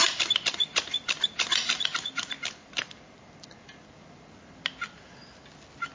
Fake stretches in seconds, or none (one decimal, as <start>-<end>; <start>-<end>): none